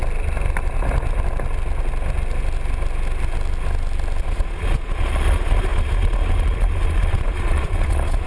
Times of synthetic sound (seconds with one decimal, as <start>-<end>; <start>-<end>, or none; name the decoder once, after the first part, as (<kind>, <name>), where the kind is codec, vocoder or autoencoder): 4.2-8.3 (vocoder, Vocos)